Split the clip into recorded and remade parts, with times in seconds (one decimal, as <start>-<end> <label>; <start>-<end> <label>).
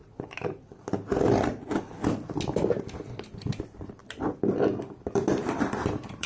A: 0.0-3.5 recorded; 3.5-4.0 remade; 4.0-5.0 recorded; 5.0-6.3 remade